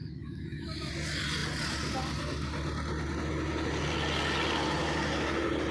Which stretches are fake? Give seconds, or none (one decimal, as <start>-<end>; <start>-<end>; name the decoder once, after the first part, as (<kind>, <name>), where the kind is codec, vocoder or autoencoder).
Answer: 0.0-0.9 (autoencoder, DAC-VAE)